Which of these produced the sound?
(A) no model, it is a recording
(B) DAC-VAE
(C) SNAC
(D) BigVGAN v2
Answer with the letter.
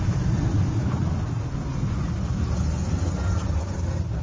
A